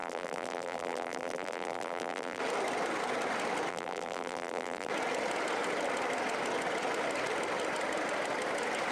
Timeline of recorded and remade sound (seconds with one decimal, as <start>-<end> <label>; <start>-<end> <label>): 0.0-2.4 remade; 2.4-3.7 recorded; 3.7-4.9 remade; 4.9-8.9 recorded